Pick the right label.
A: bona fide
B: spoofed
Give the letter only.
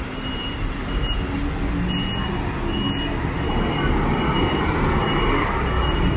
A